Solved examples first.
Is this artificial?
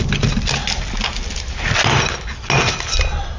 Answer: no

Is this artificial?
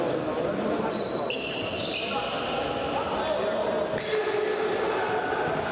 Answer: no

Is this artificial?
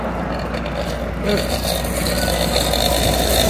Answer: no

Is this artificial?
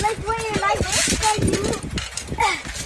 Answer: no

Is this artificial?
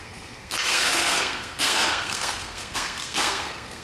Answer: yes